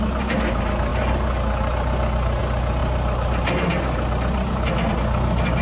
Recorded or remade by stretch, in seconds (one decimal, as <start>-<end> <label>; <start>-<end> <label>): 0.0-5.6 recorded